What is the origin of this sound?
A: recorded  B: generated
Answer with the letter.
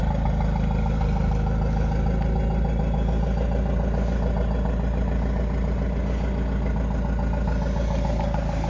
A